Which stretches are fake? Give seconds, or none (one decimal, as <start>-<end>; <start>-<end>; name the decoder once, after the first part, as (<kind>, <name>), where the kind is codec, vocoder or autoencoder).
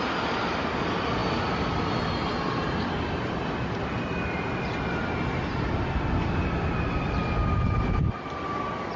none